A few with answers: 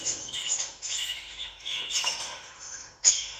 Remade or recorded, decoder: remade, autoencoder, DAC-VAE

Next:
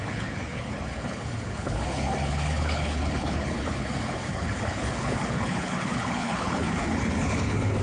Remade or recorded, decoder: remade, codec, HILCodec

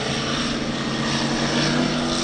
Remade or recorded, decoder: recorded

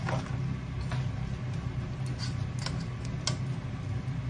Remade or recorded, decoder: recorded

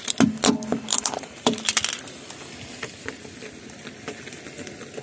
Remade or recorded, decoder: recorded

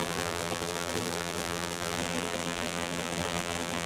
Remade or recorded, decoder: remade, vocoder, BigVGAN v2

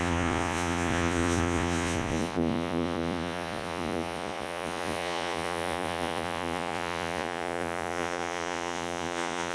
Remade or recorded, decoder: remade, vocoder, Vocos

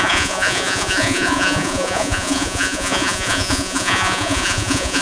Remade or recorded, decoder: remade, vocoder, Vocos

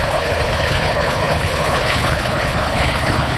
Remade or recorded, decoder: remade, codec, HILCodec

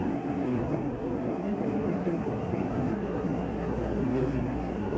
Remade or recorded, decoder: remade, codec, SNAC